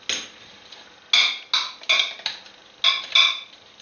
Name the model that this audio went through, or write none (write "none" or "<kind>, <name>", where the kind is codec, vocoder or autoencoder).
none